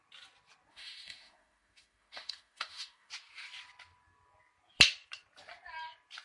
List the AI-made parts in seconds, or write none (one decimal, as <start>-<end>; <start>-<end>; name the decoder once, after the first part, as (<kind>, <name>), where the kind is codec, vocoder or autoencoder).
0.7-3.1 (autoencoder, DAC-VAE)